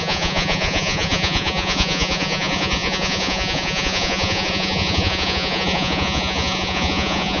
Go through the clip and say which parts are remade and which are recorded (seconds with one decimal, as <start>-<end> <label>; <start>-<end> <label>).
0.0-7.4 remade